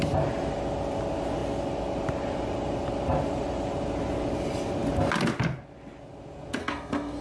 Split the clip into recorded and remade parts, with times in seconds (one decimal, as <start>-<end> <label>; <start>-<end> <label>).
0.0-6.6 recorded; 6.6-7.2 remade